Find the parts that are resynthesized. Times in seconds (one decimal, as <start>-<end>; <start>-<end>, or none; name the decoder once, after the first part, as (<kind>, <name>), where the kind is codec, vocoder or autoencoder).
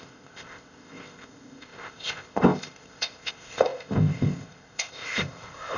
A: 0.0-5.8 (codec, ZipCodec)